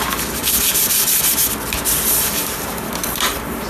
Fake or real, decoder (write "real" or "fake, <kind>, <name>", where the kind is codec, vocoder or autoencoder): real